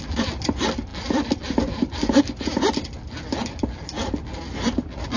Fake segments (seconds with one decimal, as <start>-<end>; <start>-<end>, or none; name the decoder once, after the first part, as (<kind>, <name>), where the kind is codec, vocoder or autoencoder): 0.0-5.2 (vocoder, BigVGAN v2)